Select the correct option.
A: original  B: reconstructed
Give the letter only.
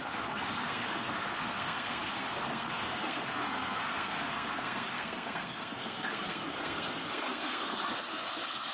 B